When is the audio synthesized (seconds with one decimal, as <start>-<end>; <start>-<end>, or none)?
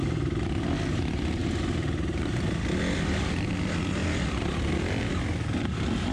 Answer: 4.0-5.0